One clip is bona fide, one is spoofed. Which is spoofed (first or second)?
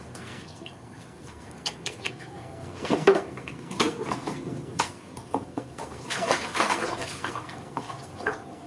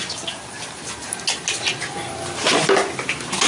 first